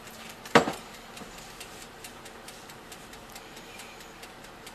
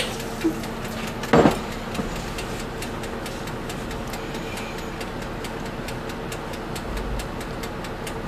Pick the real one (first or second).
second